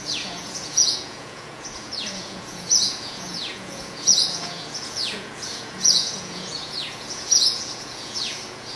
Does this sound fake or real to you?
fake